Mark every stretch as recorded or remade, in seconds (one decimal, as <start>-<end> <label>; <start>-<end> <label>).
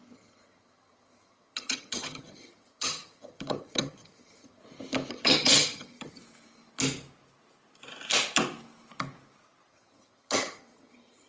0.0-4.6 remade; 4.6-5.1 recorded; 5.1-6.2 remade; 6.2-9.7 recorded; 9.7-11.3 remade